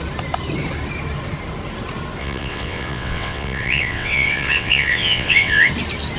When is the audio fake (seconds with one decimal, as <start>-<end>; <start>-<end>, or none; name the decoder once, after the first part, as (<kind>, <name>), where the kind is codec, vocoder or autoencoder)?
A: 2.2-5.7 (vocoder, WaveNeXt)